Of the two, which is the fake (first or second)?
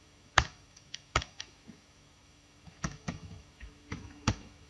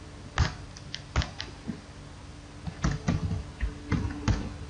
first